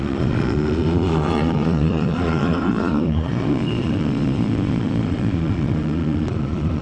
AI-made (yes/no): yes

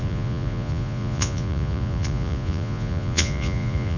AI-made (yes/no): yes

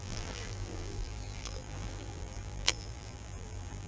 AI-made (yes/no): yes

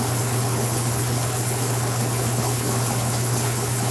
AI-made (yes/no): yes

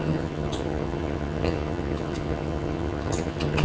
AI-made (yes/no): yes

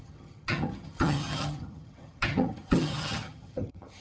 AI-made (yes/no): yes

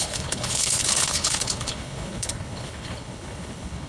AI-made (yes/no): yes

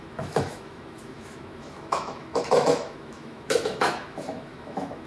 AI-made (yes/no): yes